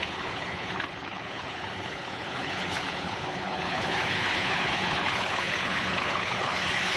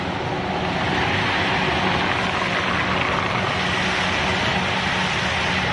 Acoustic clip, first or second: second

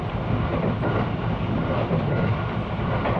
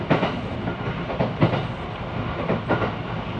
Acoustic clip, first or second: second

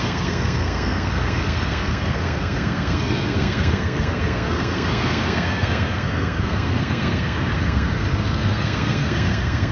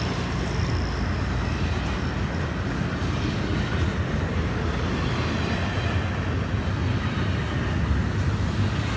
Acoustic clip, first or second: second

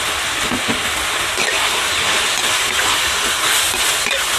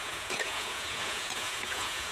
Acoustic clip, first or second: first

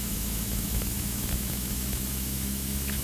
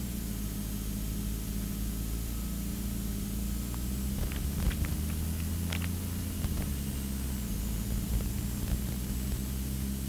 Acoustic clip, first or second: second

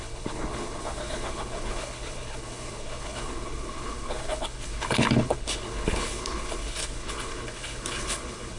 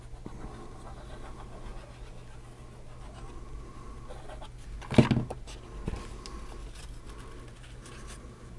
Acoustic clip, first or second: second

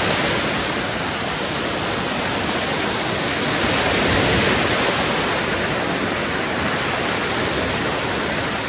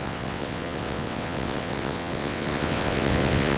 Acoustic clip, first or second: first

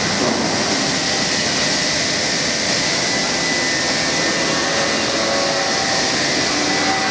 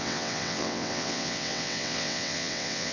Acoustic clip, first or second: first